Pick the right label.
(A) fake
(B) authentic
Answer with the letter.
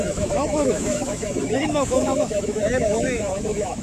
A